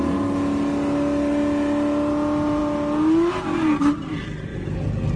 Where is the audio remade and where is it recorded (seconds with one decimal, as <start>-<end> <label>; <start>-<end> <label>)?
0.0-5.2 recorded